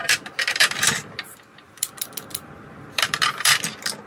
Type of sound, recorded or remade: remade